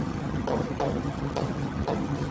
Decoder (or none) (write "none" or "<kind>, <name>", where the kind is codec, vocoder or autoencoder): vocoder, HiFi-GAN